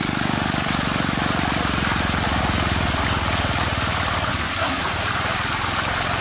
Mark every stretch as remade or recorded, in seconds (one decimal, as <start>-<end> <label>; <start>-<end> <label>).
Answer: 0.0-4.3 recorded; 4.3-4.8 remade; 4.8-6.2 recorded